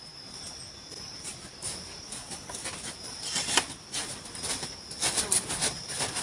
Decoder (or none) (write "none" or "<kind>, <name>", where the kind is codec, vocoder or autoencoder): none